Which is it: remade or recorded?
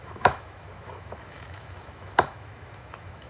remade